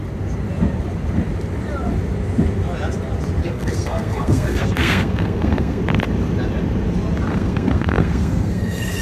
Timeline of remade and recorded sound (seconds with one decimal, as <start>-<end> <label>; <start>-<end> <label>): 0.0-3.4 recorded; 3.4-5.8 remade; 5.8-7.3 recorded; 7.3-9.0 remade